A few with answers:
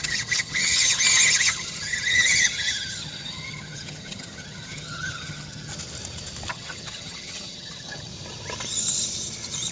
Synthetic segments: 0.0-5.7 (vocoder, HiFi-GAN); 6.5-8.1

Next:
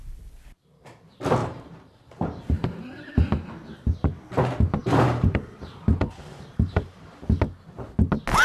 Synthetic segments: 1.4-3.1 (vocoder, BigVGAN v2); 4.8-7.2

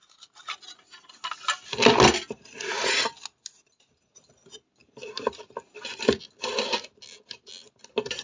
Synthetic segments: none

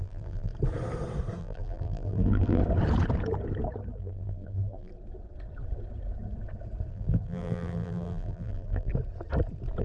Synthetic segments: 0.0-0.5 (vocoder, BigVGAN v2); 1.4-2.6; 3.9-4.9; 6.9-8.9

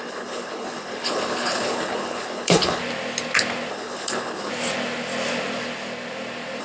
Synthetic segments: 0.0-2.8 (codec, HILCodec); 3.7-4.5

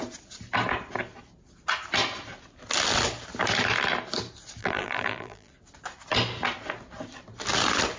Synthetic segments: 4.6-5.5 (vocoder, BigVGAN v2)